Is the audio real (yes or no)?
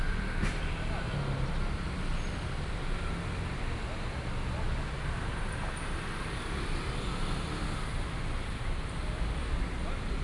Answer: yes